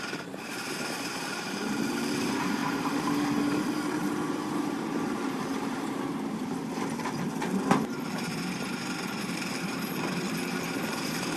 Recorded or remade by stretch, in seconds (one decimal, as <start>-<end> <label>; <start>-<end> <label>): 0.0-8.3 remade; 8.3-9.2 recorded; 9.2-11.4 remade